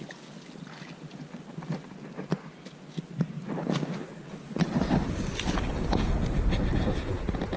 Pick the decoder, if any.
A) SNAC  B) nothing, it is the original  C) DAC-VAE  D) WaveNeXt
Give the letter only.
B